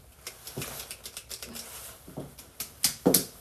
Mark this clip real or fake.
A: real